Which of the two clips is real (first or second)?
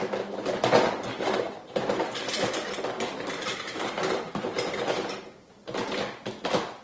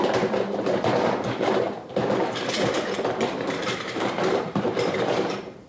first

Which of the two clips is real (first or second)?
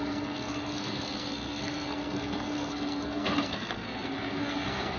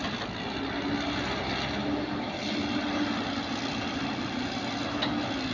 second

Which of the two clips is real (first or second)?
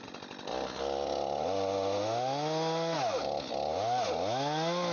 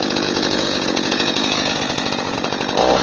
first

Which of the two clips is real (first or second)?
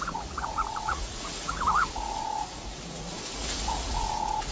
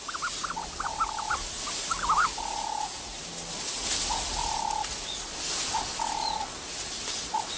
second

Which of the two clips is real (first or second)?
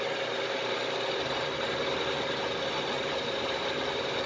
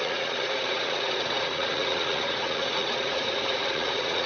first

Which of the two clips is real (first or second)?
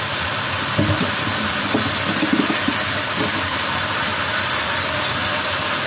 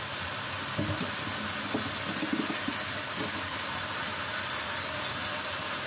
second